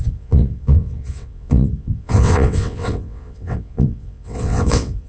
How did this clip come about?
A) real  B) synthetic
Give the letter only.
B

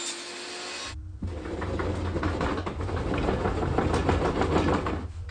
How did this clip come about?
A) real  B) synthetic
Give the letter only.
A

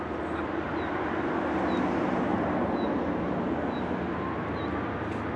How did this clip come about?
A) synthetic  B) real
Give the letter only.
B